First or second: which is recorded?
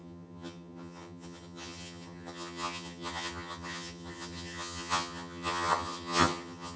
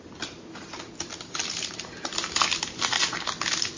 second